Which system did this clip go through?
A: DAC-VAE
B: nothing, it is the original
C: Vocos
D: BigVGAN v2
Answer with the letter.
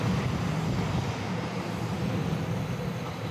B